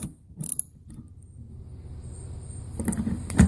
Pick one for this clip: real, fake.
fake